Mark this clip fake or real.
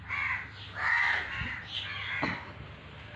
real